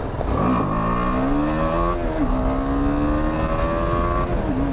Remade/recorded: recorded